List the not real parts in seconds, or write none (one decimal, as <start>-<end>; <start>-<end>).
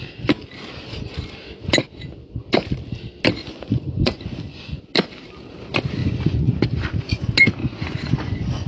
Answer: 3.4-4.8; 6.0-6.6; 7.6-8.7